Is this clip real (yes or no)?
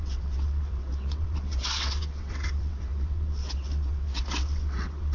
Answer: no